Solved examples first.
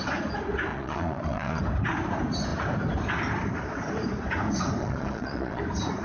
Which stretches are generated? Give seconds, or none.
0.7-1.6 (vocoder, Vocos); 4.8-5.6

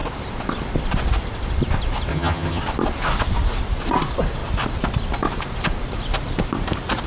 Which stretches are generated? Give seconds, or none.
2.1-2.6 (vocoder, HiFi-GAN)

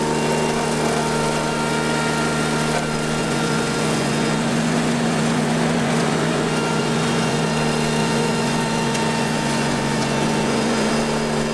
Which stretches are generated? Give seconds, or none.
3.2-7.5 (vocoder, Vocos); 8.0-10.9

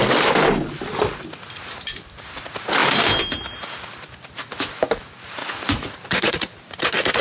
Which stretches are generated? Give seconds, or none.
5.4-6.6 (vocoder, Vocos)

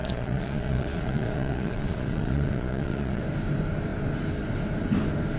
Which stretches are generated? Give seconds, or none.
0.0-3.2 (vocoder, Vocos)

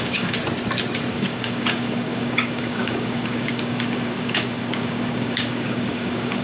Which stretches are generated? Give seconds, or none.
0.0-0.4 (codec, DAC); 1.1-6.4